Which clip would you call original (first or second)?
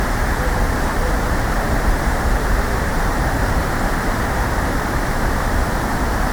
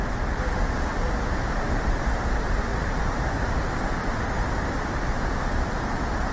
second